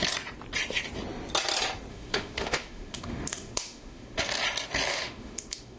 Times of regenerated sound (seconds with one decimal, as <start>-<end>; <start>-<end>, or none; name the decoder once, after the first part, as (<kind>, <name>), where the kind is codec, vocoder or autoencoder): 1.9-4.2 (autoencoder, DAC-VAE); 4.9-5.8

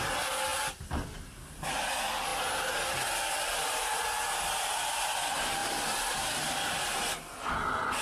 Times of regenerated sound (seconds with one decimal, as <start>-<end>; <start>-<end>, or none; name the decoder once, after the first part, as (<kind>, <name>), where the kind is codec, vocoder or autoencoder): 5.6-7.2 (vocoder, BigVGAN v2)

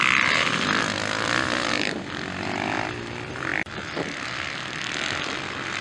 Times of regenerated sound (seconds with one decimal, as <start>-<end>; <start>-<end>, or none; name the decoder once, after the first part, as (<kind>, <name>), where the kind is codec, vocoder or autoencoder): none

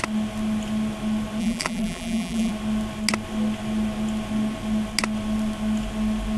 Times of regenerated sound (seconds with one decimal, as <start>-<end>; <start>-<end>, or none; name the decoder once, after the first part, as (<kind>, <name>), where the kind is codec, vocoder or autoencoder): 1.4-2.5 (vocoder, BigVGAN v2)

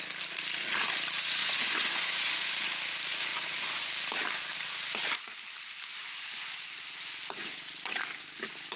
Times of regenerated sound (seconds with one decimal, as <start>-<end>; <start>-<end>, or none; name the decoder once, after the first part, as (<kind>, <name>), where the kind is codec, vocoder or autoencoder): 1.4-2.5 (vocoder, Vocos); 3.3-3.9

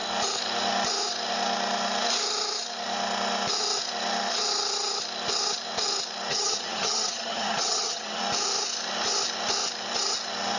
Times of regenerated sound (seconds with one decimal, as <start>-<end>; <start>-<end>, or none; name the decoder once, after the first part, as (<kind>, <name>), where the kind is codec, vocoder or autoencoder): 6.3-8.2 (vocoder, HiFi-GAN)